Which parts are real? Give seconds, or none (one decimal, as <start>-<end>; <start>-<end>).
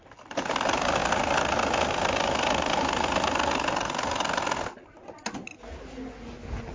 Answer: 0.0-6.7